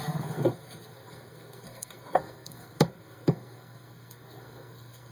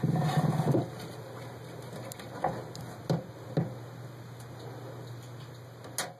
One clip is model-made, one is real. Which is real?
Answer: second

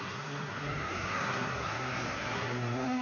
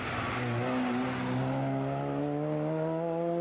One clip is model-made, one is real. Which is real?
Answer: second